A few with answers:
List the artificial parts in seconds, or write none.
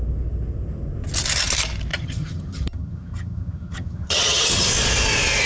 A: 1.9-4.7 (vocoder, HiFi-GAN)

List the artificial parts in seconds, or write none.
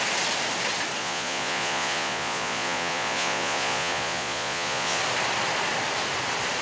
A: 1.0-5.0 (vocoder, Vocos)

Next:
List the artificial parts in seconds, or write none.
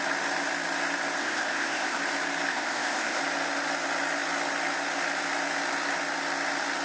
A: 1.2-2.0 (codec, ZipCodec); 2.5-3.2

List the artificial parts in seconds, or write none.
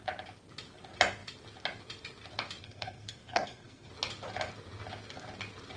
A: 2.6-3.9 (codec, SNAC)